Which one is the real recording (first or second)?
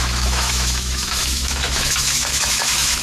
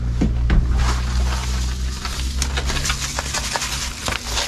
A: second